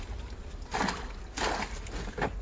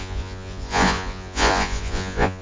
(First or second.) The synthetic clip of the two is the second